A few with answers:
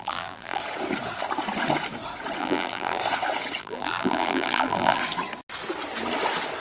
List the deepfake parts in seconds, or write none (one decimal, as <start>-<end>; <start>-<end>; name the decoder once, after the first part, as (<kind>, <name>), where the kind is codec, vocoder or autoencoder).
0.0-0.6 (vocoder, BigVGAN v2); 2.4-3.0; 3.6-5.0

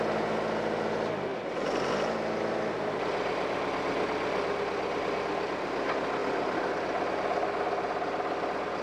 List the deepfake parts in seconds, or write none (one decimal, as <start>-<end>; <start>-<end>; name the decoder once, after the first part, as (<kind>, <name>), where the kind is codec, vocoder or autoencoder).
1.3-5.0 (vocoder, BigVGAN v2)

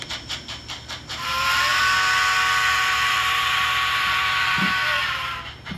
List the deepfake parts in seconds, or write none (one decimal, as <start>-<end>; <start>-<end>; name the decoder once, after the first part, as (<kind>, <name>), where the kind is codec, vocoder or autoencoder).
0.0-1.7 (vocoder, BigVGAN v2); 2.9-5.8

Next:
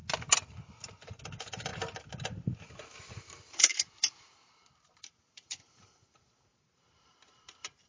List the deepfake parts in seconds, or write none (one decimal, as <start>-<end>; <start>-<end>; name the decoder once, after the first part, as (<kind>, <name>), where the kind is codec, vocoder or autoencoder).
1.2-1.7 (vocoder, BigVGAN v2); 3.2-7.9